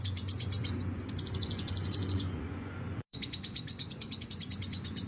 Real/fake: fake